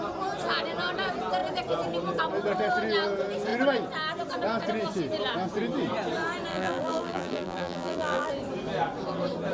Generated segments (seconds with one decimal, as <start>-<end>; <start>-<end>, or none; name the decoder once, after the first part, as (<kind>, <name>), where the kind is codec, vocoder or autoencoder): 6.5-8.3 (vocoder, BigVGAN v2)

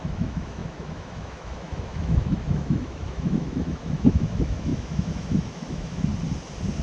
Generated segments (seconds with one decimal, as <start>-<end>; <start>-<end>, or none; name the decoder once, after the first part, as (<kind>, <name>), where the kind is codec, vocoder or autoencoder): 0.0-6.1 (autoencoder, DAC-VAE)

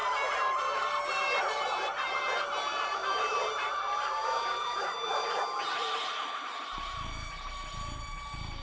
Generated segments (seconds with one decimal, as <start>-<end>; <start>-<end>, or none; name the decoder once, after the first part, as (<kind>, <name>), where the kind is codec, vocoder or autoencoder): 0.0-3.7 (vocoder, BigVGAN v2); 4.2-5.4

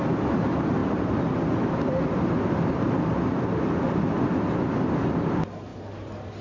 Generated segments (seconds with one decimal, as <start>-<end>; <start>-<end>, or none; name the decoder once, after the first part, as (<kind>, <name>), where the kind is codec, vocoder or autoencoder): none

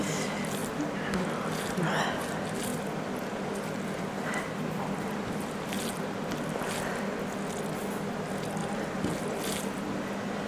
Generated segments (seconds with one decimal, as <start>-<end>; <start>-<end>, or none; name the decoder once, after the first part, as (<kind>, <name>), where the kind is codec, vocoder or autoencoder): 2.7-6.0 (vocoder, BigVGAN v2); 8.6-9.2